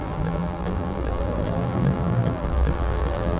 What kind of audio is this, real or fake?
fake